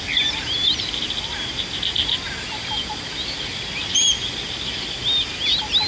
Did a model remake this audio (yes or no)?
no